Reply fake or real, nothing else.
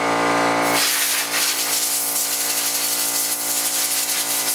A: real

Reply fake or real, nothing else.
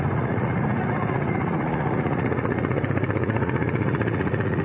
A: fake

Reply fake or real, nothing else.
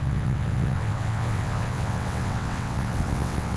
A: fake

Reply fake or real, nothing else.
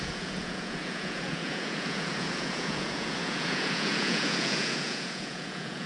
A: fake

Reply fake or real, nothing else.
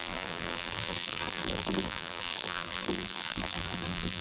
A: fake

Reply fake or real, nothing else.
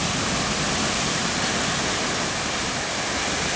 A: real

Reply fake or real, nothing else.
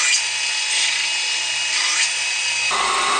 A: real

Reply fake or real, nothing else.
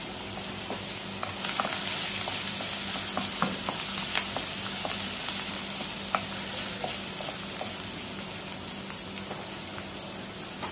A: real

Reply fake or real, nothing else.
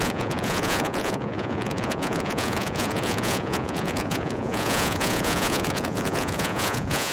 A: fake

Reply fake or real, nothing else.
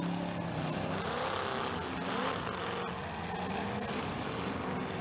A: real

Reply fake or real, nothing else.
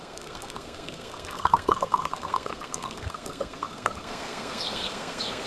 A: fake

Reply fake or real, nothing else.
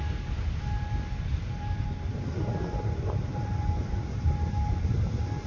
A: real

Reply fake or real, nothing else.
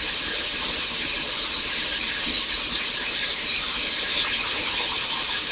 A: fake